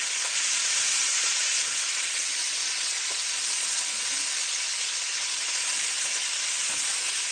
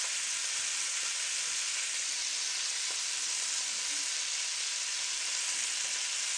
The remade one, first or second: first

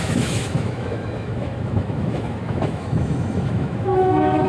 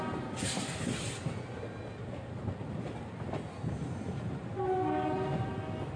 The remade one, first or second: first